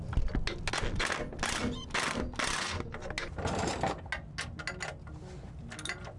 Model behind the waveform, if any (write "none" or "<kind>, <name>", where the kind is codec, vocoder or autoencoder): none